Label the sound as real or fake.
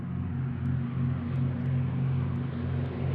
real